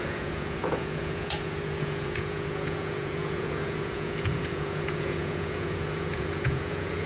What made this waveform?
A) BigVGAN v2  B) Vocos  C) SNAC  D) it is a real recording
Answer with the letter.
B